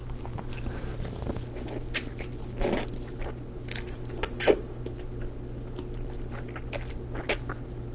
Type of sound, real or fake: real